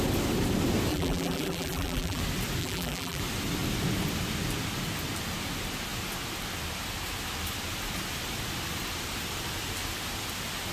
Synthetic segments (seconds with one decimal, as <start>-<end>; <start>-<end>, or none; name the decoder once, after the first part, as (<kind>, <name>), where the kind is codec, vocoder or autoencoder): 0.9-2.2 (vocoder, BigVGAN v2); 2.6-3.2